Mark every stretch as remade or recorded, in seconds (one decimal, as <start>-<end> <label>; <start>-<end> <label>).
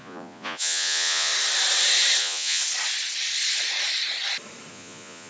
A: 0.0-1.3 remade; 1.3-2.2 recorded; 2.2-2.6 remade; 2.6-4.7 recorded; 4.7-5.3 remade